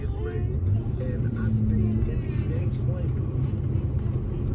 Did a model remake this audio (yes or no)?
no